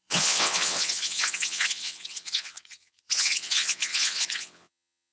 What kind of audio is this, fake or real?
fake